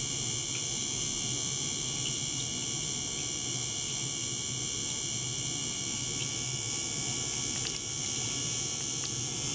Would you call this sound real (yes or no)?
yes